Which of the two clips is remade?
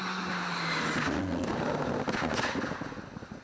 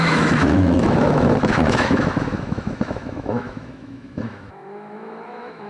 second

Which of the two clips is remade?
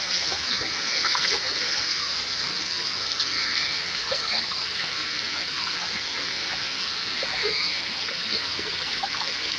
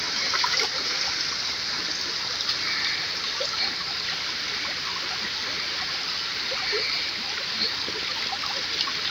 first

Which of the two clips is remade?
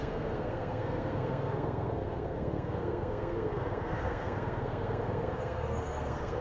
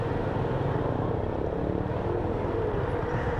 first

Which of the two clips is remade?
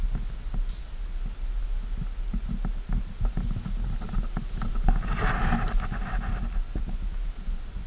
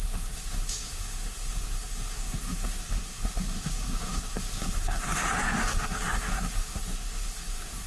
second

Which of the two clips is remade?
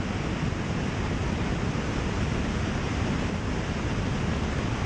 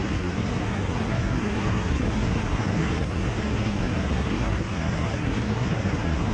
second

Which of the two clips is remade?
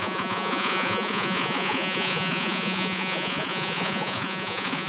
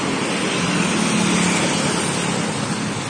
first